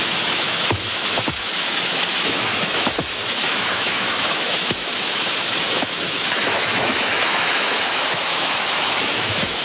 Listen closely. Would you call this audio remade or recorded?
remade